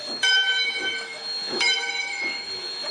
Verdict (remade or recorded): remade